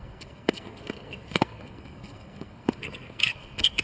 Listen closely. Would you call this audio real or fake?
fake